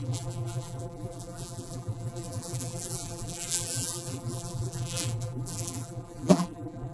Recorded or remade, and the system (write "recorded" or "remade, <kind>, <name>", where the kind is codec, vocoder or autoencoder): remade, vocoder, BigVGAN v2